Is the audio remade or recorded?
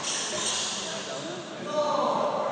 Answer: recorded